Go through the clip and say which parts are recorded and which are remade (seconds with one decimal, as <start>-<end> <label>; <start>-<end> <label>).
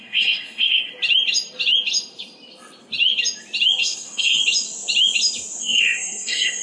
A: 0.0-0.9 remade; 0.9-3.8 recorded; 3.8-4.4 remade; 4.4-5.6 recorded; 5.6-6.6 remade